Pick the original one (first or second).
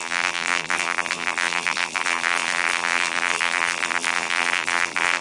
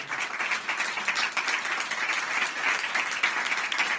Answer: second